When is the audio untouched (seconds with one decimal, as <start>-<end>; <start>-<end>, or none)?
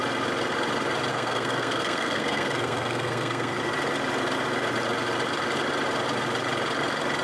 0.0-1.1; 3.6-7.2